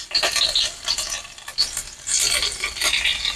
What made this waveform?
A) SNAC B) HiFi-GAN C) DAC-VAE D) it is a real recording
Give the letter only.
D